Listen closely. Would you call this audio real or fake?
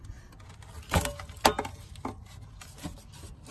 real